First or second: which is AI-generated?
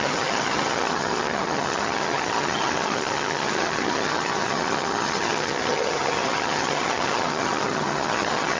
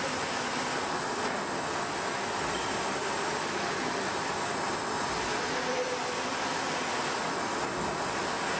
first